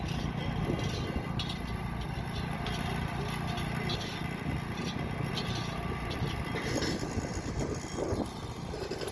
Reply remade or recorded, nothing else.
recorded